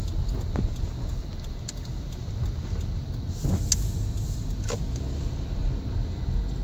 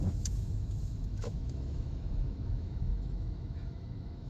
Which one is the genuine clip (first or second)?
first